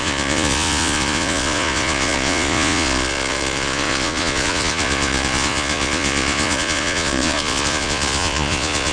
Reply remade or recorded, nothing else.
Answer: remade